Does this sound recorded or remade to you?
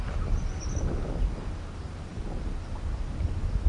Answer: recorded